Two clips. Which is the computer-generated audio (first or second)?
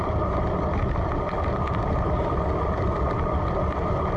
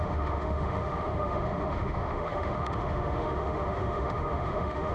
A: second